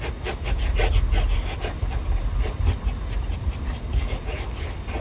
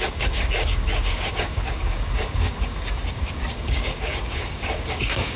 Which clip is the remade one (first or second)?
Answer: second